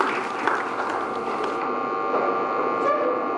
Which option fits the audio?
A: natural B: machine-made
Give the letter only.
A